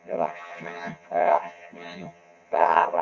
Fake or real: fake